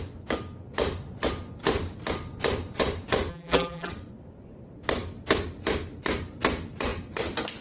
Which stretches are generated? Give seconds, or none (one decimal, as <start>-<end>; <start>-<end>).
3.3-3.9